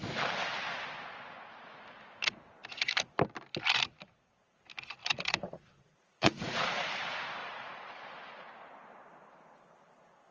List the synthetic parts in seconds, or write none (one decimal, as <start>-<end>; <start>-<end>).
5.0-6.9; 7.4-8.5